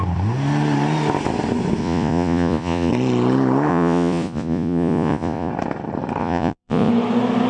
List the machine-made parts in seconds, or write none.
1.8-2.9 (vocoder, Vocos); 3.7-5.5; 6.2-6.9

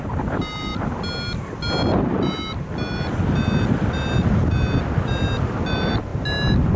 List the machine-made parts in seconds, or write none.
none

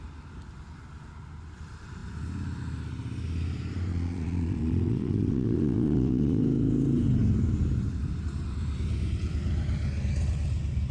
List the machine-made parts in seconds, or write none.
3.9-6.4 (vocoder, Vocos)

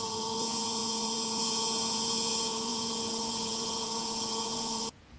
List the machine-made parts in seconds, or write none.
0.0-5.2 (vocoder, Vocos)